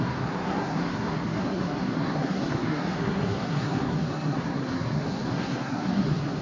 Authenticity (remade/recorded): remade